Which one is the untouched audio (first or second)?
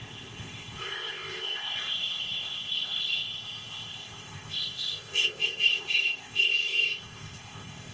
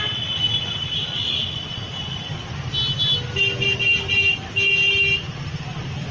second